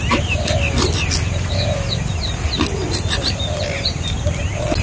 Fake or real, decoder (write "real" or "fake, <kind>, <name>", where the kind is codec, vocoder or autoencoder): real